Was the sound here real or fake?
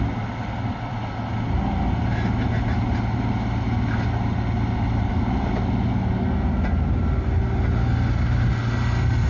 real